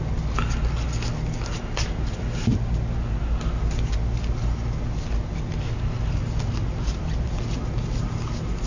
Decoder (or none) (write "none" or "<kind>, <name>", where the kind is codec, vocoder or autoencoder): none